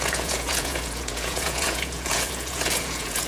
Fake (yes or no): yes